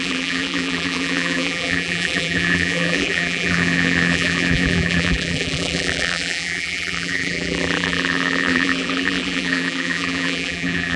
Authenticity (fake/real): fake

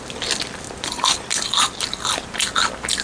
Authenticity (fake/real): real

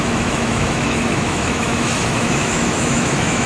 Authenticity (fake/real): fake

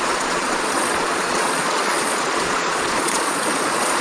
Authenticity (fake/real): fake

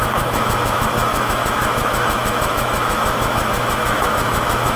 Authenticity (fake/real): fake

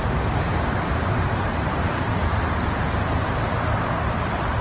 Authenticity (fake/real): fake